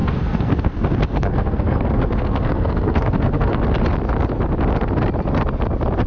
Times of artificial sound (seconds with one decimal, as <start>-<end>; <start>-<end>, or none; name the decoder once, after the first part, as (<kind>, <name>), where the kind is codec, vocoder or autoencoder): 0.0-3.6 (codec, SNAC)